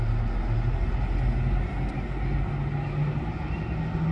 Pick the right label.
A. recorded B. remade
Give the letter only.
A